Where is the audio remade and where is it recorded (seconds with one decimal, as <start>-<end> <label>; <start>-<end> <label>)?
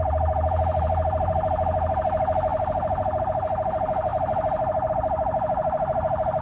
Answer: 0.0-6.4 remade